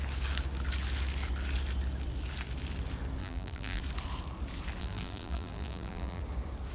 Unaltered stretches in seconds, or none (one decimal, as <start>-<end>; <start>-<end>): 0.0-3.2; 3.8-4.8; 6.2-6.7